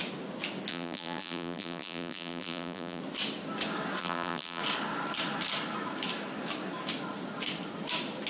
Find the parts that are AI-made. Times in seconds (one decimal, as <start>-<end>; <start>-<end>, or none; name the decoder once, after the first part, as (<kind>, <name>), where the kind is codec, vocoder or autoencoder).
0.7-3.0 (vocoder, BigVGAN v2); 4.0-4.6